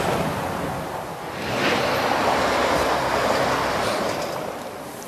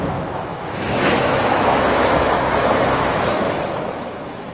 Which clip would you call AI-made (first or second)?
second